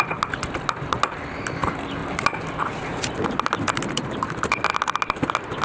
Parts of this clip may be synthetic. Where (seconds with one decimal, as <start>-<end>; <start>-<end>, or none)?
none